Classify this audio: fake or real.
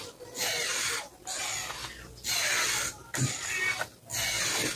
real